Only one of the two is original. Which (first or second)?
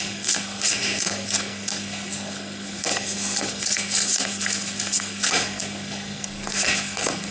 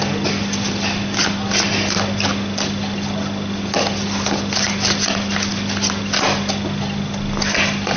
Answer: second